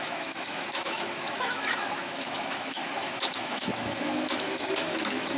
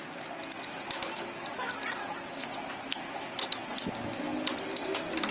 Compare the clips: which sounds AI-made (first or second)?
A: first